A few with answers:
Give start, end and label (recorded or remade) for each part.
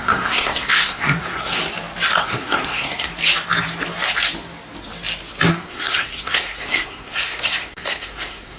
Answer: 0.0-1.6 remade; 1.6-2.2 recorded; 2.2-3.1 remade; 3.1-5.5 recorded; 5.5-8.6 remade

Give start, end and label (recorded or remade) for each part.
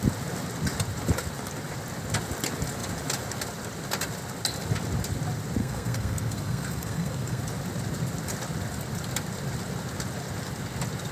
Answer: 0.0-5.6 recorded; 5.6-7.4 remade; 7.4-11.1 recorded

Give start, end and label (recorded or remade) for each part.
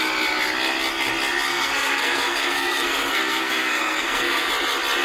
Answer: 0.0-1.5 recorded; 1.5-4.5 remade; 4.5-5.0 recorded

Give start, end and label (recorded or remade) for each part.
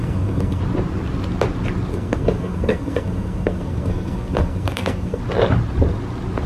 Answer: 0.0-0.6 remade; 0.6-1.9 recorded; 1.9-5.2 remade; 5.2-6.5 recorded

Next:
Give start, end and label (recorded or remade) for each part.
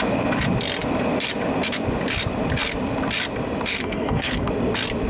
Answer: 0.0-3.7 recorded; 3.7-4.5 remade; 4.5-5.1 recorded